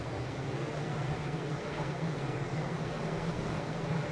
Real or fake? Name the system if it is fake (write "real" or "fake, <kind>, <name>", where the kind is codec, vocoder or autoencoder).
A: fake, codec, SNAC